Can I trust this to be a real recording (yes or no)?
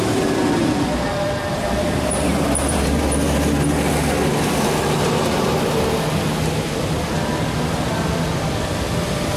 yes